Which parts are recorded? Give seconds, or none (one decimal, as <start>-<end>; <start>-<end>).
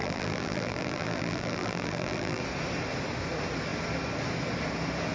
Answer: 2.4-5.1